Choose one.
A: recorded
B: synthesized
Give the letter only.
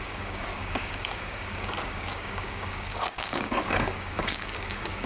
B